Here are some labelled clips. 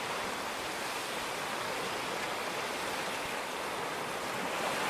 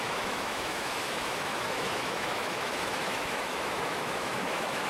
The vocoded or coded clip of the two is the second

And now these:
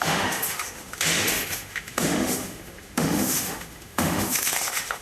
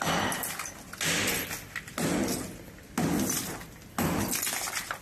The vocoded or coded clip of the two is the first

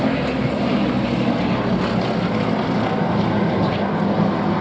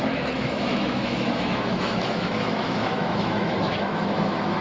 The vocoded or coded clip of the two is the second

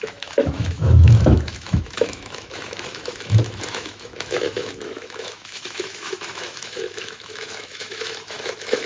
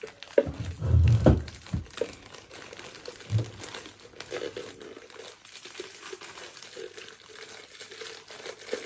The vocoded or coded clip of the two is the first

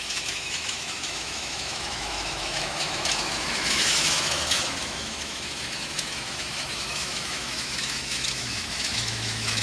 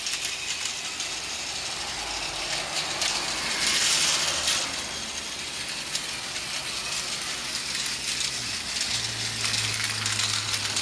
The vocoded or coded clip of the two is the first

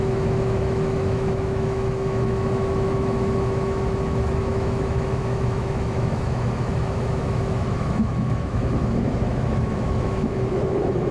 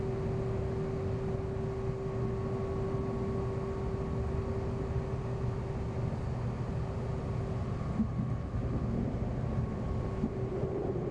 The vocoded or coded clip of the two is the first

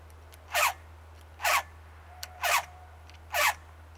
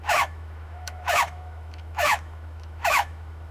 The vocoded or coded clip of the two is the second